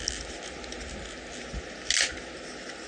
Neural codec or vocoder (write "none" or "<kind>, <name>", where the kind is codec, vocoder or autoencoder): none